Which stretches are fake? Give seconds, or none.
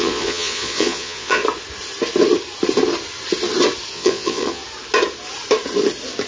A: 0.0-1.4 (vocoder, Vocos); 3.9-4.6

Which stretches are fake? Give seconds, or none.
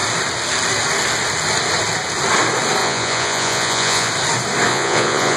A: 2.8-4.1 (vocoder, Vocos); 4.7-5.4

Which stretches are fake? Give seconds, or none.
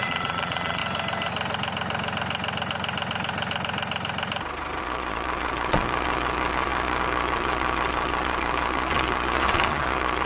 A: 0.0-0.8 (vocoder, Vocos); 4.8-10.3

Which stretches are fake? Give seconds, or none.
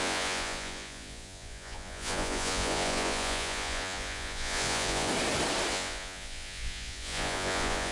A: 0.0-5.1 (vocoder, Vocos); 5.7-7.9